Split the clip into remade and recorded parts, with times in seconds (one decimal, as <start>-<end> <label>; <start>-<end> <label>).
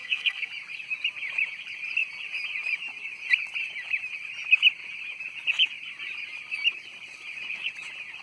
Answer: 0.0-0.5 remade; 0.5-8.2 recorded